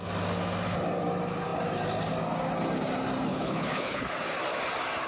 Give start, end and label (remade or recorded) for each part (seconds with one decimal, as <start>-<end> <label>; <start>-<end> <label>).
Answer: 0.0-3.3 recorded; 3.3-4.1 remade; 4.1-5.1 recorded